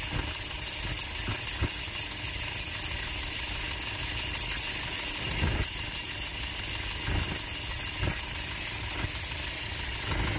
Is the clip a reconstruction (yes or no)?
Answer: no